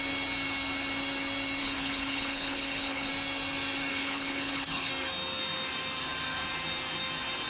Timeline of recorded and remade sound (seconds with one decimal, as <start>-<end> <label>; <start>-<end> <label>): 0.0-1.6 recorded; 1.6-3.1 remade; 3.1-3.9 recorded; 3.9-4.9 remade; 4.9-7.5 recorded